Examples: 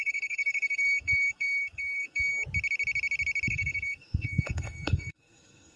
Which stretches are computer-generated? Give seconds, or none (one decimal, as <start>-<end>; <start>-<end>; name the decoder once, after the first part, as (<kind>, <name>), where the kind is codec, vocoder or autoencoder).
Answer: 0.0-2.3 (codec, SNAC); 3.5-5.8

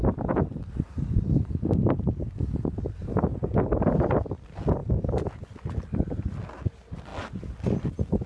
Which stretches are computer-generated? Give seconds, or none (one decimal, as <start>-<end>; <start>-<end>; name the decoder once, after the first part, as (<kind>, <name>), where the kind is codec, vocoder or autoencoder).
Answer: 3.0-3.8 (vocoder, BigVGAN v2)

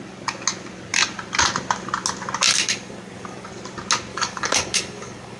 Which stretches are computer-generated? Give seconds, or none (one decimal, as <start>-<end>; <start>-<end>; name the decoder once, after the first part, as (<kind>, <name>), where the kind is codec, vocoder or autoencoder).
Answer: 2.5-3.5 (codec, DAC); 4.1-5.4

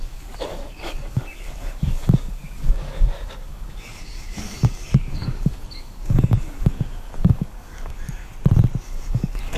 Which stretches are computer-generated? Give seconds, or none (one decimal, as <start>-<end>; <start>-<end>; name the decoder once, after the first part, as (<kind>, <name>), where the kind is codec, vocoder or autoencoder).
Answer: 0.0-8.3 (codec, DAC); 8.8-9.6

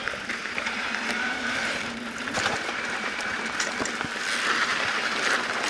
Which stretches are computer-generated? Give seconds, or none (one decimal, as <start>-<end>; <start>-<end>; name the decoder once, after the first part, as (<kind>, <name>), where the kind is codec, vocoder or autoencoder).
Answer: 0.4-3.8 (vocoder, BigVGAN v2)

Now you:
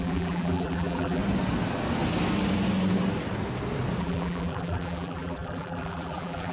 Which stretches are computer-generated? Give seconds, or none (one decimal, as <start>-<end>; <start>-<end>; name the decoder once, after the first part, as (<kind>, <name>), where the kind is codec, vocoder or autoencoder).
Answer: 0.0-1.2 (vocoder, BigVGAN v2); 4.0-6.5

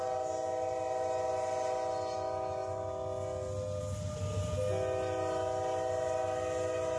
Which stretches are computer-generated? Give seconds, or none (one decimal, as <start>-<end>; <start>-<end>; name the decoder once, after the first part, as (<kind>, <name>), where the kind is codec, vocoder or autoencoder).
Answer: none

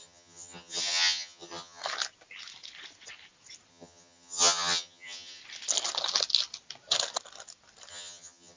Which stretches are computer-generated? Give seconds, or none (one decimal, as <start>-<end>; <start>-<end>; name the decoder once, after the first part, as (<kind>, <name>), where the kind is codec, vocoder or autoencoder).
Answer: 0.0-1.8 (vocoder, HiFi-GAN); 3.7-5.4; 7.9-8.6